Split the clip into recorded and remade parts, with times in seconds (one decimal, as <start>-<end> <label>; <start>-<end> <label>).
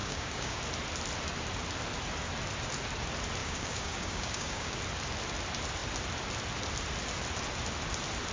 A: 0.0-0.6 remade; 0.6-3.4 recorded; 3.4-4.8 remade; 4.8-8.3 recorded